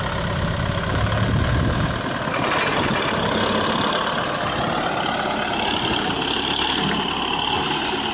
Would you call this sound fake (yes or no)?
no